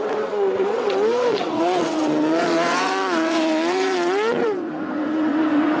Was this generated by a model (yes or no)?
yes